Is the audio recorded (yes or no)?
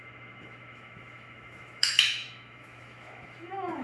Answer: no